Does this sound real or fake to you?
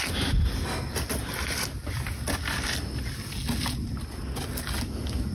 real